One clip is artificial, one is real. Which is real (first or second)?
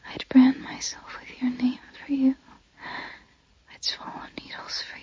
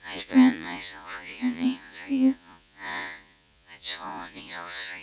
first